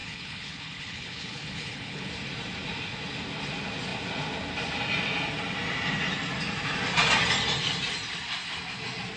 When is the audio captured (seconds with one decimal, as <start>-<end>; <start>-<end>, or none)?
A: 2.1-9.2